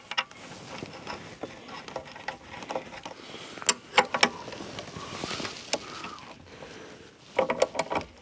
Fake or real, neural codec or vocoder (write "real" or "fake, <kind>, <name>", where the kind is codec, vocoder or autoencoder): real